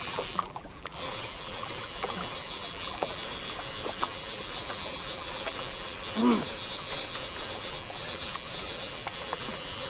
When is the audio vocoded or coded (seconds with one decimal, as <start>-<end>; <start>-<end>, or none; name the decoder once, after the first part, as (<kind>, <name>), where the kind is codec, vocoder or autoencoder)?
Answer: 0.0-3.2 (vocoder, BigVGAN v2); 4.0-6.2; 7.4-9.9